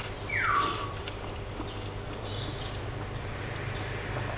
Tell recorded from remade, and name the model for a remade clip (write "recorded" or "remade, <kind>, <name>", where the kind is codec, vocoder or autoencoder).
remade, vocoder, BigVGAN v2